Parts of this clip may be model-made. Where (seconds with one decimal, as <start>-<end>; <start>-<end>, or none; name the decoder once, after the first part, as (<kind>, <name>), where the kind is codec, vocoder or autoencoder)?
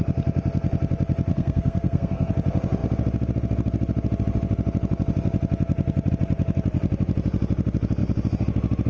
1.3-2.3 (codec, SNAC)